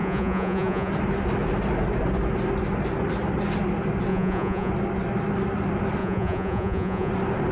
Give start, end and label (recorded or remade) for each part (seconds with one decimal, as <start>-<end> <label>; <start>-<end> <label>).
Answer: 0.0-0.9 remade; 0.9-4.1 recorded; 4.1-4.7 remade; 4.7-6.0 recorded; 6.0-7.1 remade; 7.1-7.5 recorded